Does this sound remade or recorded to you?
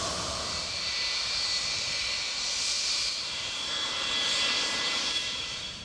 remade